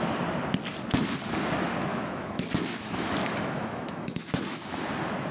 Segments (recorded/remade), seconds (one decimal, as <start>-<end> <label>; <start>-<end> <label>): 0.0-1.9 recorded; 1.9-4.8 remade; 4.8-5.3 recorded